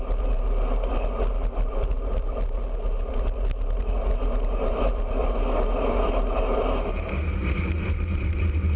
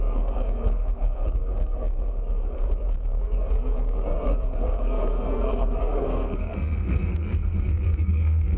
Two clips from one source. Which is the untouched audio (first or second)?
first